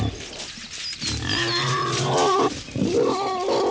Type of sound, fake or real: real